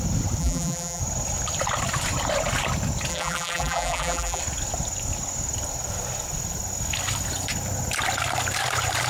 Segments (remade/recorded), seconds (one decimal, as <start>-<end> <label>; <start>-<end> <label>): 0.0-0.4 recorded; 0.4-1.0 remade; 1.0-3.1 recorded; 3.1-4.4 remade; 4.4-9.1 recorded